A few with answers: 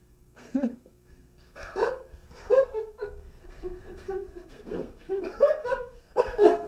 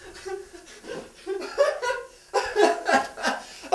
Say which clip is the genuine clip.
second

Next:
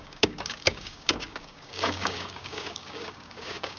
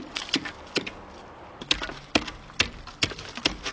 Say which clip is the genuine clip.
second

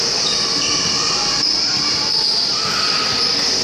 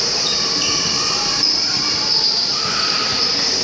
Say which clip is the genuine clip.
first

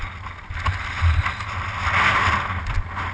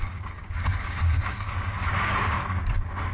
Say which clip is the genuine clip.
first